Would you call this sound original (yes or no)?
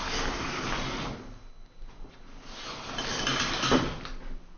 yes